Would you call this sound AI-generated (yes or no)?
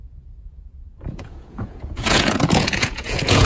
yes